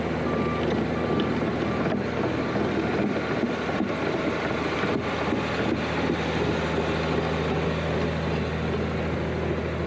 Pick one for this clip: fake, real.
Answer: real